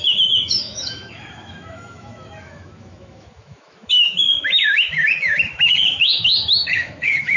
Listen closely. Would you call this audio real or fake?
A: fake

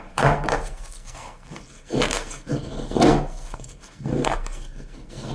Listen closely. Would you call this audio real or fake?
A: fake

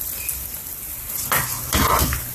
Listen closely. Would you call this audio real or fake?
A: fake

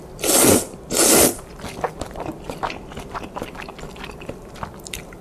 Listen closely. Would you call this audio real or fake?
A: real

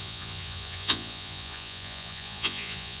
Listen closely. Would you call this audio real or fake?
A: fake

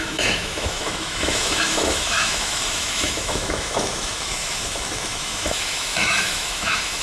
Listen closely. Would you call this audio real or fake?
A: fake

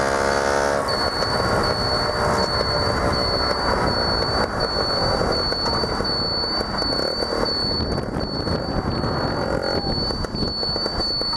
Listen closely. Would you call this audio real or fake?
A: real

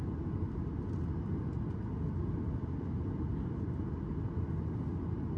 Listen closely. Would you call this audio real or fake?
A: real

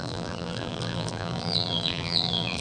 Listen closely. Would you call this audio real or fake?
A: fake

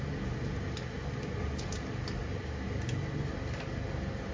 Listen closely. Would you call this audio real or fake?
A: real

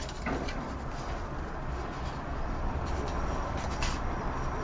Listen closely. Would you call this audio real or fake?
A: fake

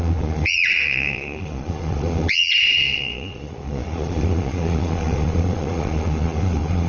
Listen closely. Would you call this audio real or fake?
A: fake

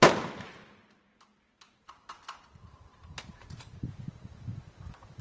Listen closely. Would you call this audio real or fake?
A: real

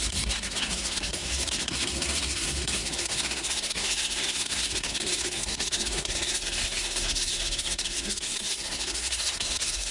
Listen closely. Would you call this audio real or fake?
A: fake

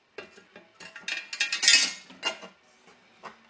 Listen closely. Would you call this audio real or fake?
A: real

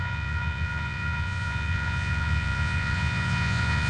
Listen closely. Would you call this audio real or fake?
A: fake